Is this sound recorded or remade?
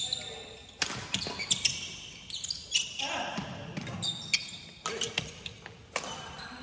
recorded